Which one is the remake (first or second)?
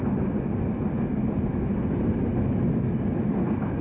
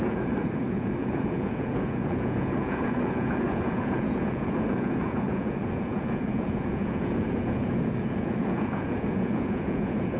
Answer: second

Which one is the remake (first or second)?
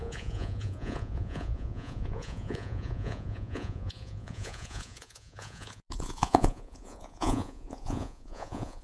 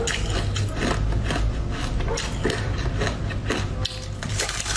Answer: first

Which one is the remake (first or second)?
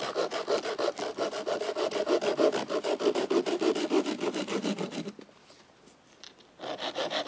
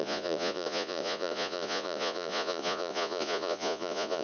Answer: second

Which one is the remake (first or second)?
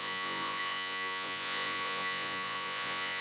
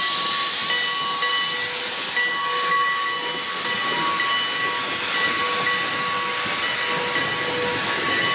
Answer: first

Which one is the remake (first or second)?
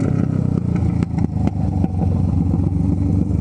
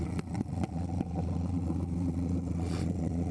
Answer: second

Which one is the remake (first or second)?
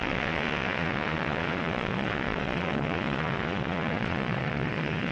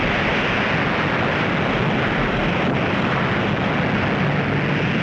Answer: first